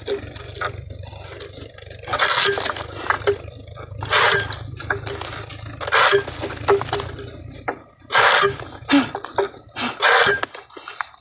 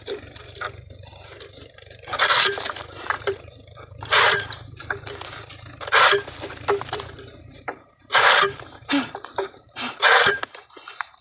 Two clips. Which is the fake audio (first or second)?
second